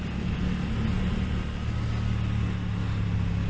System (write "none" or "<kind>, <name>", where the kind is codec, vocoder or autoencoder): none